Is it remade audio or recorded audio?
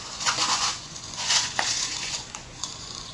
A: remade